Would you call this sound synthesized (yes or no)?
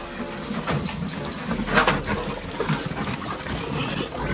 no